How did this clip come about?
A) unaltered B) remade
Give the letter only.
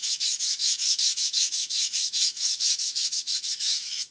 B